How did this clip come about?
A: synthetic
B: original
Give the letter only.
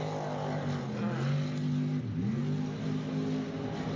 B